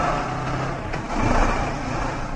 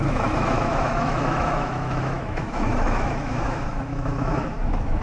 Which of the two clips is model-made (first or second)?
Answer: second